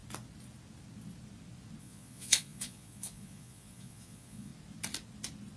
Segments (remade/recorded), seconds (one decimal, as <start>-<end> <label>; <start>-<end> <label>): 0.0-1.8 recorded; 1.8-4.5 remade; 4.5-5.6 recorded